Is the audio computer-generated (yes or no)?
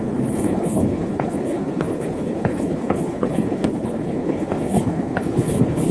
yes